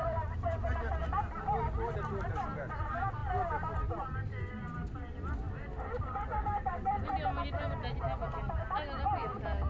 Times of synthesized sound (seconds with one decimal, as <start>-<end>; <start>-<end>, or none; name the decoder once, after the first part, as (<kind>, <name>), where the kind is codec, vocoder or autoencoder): none